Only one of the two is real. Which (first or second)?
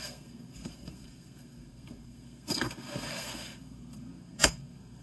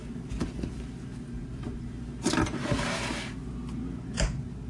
second